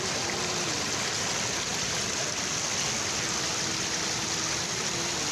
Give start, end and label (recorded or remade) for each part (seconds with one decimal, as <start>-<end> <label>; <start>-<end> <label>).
0.0-5.3 recorded